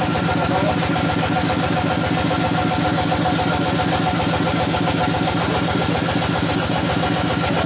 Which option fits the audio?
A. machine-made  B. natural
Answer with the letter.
B